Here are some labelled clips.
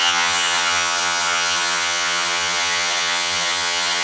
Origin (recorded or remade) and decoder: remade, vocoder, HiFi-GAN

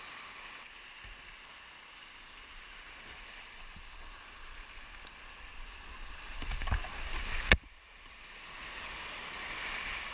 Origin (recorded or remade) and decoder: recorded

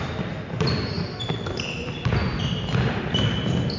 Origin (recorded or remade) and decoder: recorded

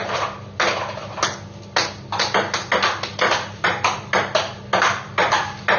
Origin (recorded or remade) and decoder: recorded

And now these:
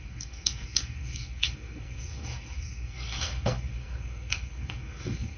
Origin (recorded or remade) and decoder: remade, codec, SNAC